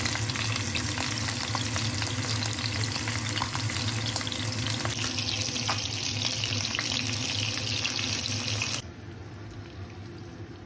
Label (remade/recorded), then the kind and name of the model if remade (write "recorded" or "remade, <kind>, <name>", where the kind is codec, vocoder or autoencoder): recorded